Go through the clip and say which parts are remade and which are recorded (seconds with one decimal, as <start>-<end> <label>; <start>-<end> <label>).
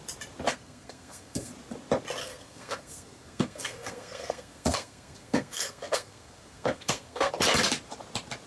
0.0-0.5 recorded; 0.5-1.5 remade; 1.5-2.2 recorded; 2.2-7.3 remade; 7.3-8.5 recorded